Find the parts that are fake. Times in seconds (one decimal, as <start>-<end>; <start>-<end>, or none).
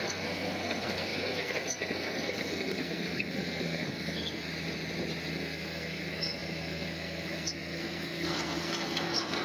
0.0-4.5; 5.3-9.4